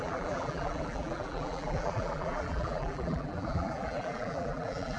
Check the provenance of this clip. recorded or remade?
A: remade